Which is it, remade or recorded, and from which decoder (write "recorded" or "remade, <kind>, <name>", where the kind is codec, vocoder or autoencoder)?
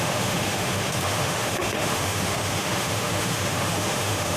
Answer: remade, autoencoder, DAC-VAE